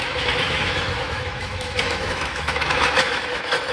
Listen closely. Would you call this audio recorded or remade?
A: remade